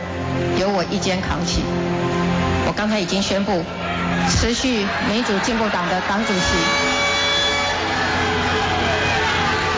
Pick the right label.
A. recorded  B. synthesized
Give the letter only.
A